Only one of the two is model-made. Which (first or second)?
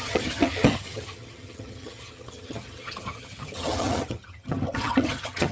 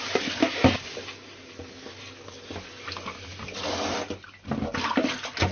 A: first